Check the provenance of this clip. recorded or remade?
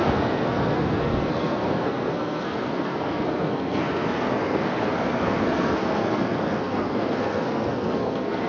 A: remade